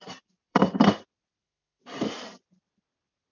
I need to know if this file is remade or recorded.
remade